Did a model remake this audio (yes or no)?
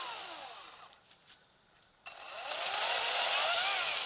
no